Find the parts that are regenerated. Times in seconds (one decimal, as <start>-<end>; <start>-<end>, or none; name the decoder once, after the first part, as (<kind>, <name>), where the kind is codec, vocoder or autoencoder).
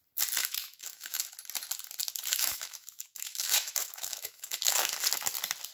0.4-1.2 (autoencoder, DAC-VAE); 2.3-4.9